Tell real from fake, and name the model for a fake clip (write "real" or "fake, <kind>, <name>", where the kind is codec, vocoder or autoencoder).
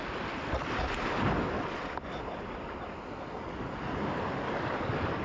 real